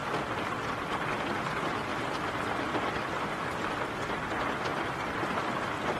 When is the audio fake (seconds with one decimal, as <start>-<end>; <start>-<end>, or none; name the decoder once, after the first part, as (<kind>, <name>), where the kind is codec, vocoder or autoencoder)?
0.0-0.7 (vocoder, BigVGAN v2); 1.9-3.7